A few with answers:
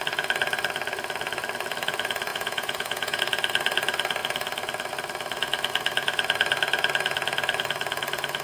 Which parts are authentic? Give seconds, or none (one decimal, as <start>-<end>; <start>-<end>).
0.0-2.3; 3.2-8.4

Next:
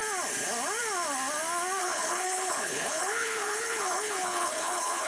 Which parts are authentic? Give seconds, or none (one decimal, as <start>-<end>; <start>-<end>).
0.0-1.8

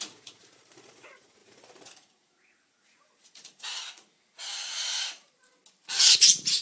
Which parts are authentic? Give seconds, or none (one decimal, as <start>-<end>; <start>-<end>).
5.6-6.6

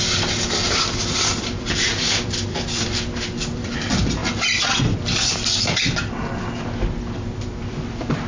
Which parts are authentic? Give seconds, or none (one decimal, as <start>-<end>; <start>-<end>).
4.2-7.0

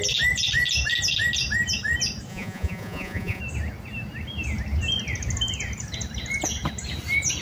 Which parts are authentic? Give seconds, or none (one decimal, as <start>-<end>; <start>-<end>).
0.0-2.3; 3.4-7.4

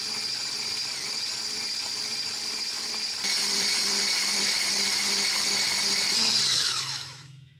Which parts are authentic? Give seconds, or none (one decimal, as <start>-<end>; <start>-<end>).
0.0-6.5